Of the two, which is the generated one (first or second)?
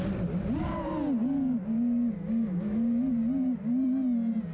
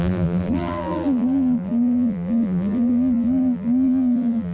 second